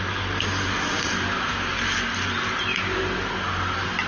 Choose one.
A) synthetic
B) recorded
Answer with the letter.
B